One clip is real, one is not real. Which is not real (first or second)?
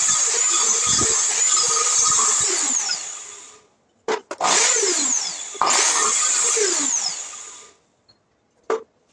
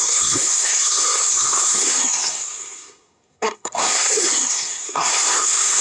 second